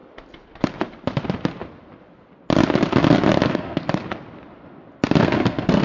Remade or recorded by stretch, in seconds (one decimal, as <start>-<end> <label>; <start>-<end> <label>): 0.0-3.5 recorded; 3.5-4.0 remade; 4.0-5.2 recorded; 5.2-5.8 remade